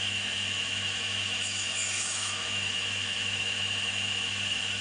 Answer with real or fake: fake